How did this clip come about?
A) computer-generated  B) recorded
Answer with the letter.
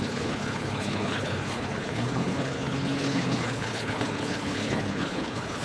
A